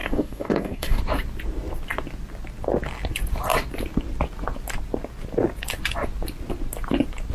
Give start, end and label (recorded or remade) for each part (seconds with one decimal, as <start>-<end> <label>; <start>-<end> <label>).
0.0-1.0 remade; 1.0-7.3 recorded

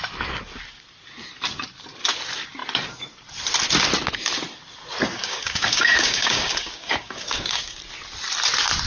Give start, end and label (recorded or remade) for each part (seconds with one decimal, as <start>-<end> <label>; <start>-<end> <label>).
0.0-5.2 recorded; 5.2-7.8 remade; 7.8-8.9 recorded

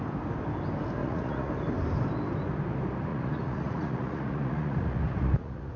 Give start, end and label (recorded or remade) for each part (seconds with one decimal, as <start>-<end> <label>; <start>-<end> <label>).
0.0-1.0 recorded; 1.0-1.5 remade; 1.5-3.1 recorded; 3.1-5.8 remade

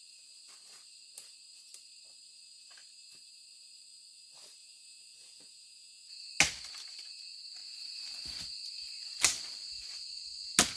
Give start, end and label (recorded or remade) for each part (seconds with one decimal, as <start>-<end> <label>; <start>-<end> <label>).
0.0-4.6 recorded; 4.6-6.3 remade; 6.3-10.8 recorded